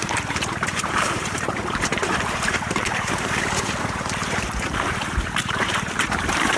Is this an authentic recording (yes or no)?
no